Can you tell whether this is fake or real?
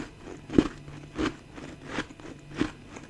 real